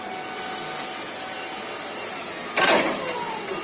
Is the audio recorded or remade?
recorded